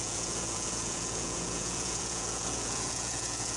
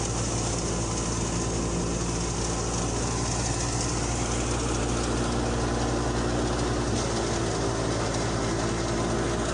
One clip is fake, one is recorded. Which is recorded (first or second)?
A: second